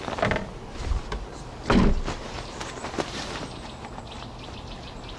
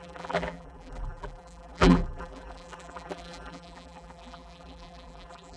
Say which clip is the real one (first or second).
first